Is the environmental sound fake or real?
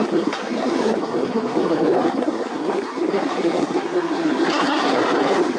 fake